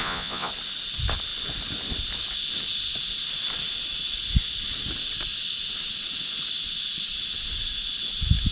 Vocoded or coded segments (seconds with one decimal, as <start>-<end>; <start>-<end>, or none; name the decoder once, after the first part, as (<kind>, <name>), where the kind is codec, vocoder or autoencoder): 0.0-0.5 (vocoder, Vocos)